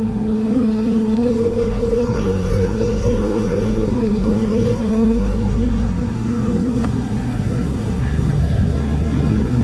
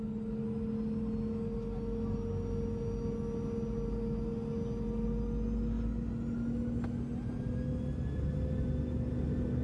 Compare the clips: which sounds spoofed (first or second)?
first